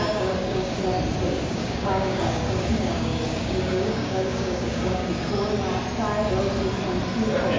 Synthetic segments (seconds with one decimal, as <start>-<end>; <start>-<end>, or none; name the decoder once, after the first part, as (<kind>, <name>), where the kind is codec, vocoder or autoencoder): 0.0-0.8 (codec, DAC); 1.4-5.0